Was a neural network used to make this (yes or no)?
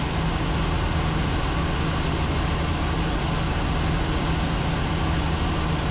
no